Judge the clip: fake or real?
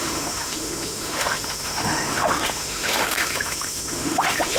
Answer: fake